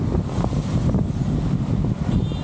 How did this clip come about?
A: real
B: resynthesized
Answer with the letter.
A